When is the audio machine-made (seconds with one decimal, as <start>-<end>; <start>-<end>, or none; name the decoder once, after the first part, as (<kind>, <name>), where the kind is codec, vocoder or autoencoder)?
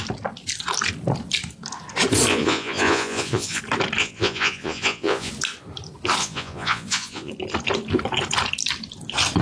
2.3-3.6 (vocoder, Vocos); 4.0-5.3; 6.2-7.3